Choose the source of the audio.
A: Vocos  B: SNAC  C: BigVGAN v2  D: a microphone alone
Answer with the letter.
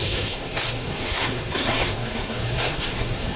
B